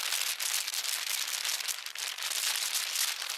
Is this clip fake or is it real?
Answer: real